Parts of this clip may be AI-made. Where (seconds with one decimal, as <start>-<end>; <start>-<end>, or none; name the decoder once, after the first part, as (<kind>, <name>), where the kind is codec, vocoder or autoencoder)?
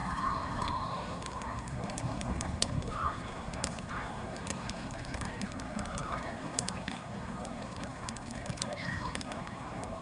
0.0-10.0 (codec, SNAC)